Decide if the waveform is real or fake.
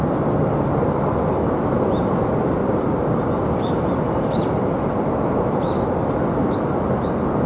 real